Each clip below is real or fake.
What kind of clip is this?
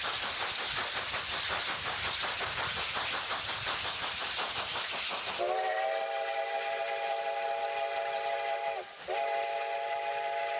real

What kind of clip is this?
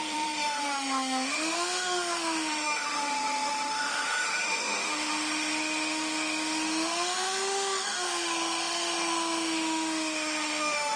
fake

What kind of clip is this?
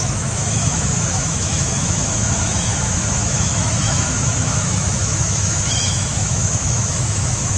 fake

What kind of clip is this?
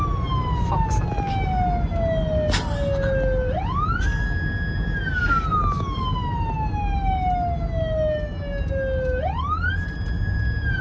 real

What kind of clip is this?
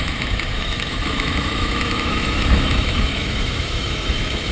fake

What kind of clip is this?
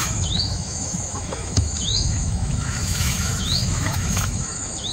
fake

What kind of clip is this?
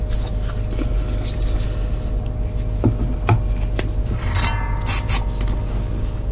real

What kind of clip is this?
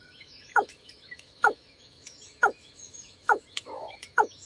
fake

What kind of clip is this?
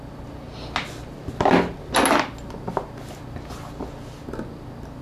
real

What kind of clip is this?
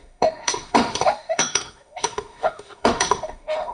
fake